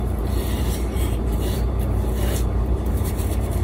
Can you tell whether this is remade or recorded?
remade